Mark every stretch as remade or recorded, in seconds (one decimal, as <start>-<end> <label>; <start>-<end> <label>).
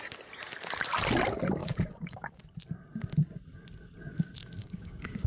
0.0-1.6 recorded; 1.6-2.4 remade; 2.4-4.6 recorded; 4.6-5.3 remade